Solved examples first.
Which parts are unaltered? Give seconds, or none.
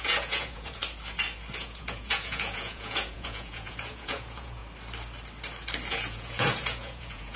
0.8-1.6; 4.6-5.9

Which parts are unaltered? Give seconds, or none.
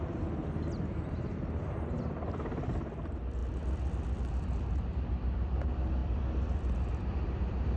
0.0-7.8